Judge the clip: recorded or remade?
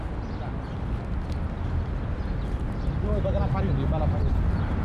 recorded